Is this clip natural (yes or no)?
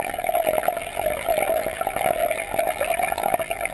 no